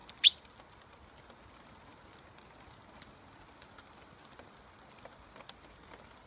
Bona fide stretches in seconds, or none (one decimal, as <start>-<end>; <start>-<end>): 0.0-6.3